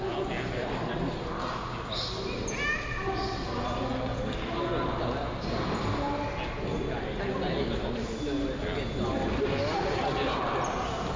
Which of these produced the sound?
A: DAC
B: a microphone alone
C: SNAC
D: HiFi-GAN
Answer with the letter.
B